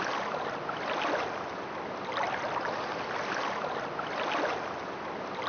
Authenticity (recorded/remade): recorded